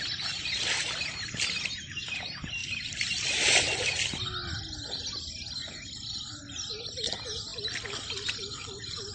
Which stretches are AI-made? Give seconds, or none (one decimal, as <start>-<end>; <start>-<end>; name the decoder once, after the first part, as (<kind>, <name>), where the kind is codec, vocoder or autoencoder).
none